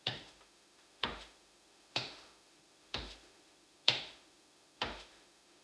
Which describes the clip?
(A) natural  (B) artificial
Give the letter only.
B